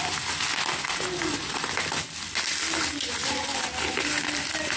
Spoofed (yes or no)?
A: no